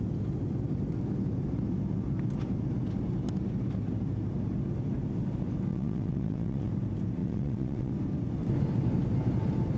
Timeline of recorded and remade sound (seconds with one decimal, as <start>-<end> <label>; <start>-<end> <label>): 0.0-5.7 recorded; 5.7-6.7 remade; 6.7-7.2 recorded; 7.2-7.9 remade; 7.9-9.8 recorded